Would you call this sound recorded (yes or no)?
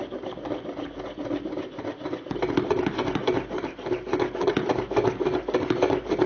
yes